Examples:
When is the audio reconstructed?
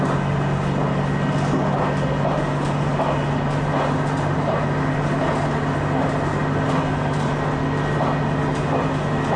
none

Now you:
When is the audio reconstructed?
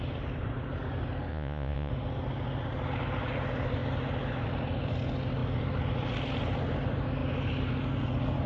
1.3-1.9 (vocoder, Vocos)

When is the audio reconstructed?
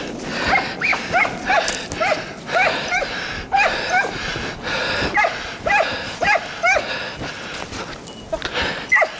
none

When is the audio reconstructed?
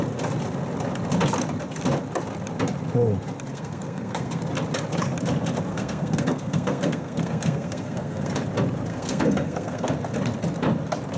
3.5-4.4 (codec, SNAC); 5.7-8.3; 8.9-9.9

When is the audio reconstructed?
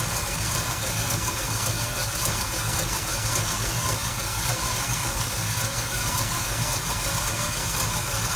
0.0-8.4 (codec, SNAC)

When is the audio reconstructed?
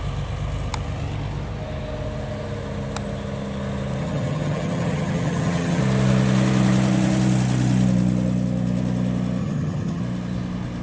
4.0-5.8 (vocoder, HiFi-GAN); 9.4-10.0